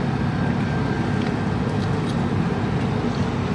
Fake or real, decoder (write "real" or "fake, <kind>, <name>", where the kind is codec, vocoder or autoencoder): real